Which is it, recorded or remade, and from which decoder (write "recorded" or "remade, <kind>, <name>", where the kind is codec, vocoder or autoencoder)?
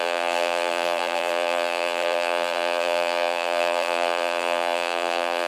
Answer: remade, vocoder, BigVGAN v2